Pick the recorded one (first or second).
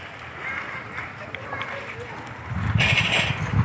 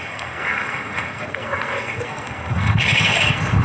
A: first